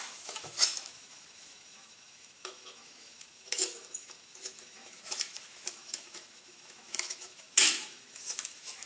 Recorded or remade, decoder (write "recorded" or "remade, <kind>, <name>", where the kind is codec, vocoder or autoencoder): remade, autoencoder, DAC-VAE